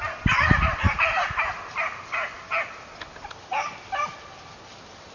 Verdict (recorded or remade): recorded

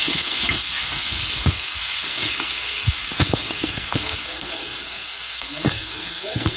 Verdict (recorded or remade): remade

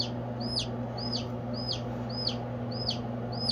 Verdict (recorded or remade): recorded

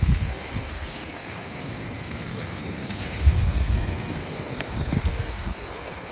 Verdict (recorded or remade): remade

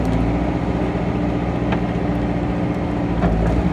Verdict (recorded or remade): recorded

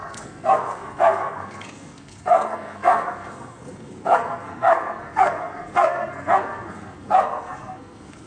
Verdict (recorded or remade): remade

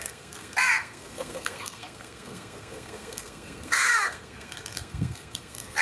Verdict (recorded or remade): remade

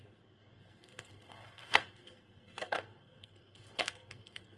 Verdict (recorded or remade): remade